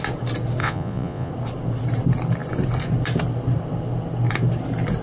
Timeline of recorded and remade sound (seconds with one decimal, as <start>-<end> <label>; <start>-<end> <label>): 0.0-0.6 recorded; 0.6-1.3 remade; 1.3-5.0 recorded